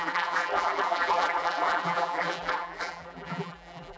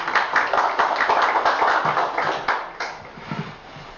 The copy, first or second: first